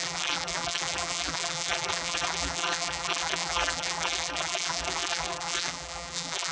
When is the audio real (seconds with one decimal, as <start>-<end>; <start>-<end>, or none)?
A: none